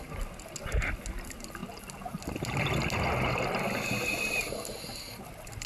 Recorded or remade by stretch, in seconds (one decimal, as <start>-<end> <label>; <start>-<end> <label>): 0.0-5.7 recorded